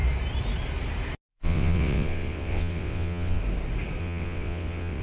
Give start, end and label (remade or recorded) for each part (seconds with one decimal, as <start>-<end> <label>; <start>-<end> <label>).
0.0-1.3 recorded; 1.3-3.4 remade; 3.4-4.0 recorded; 4.0-5.0 remade